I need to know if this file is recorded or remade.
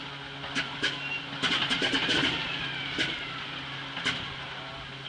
recorded